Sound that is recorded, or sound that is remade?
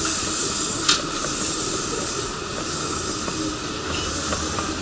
recorded